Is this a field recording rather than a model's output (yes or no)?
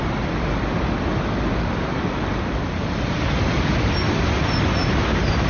yes